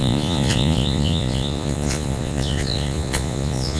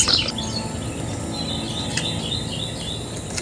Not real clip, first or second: first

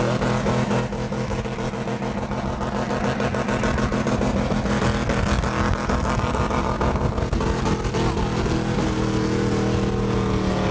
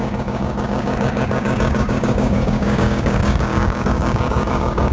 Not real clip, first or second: second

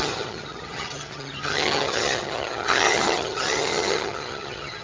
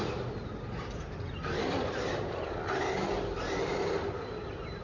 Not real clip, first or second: first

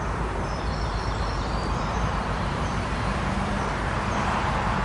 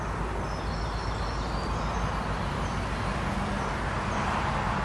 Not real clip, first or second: first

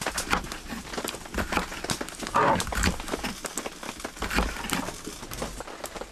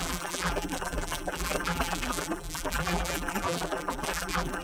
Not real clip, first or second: second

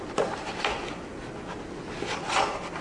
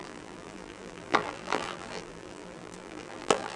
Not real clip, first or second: second